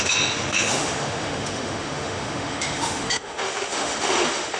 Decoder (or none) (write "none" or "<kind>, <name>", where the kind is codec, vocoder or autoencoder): autoencoder, DAC-VAE